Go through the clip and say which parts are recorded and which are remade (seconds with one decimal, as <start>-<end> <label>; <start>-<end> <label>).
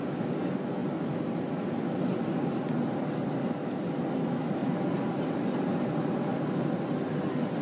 0.0-4.6 recorded; 4.6-5.3 remade; 5.3-7.6 recorded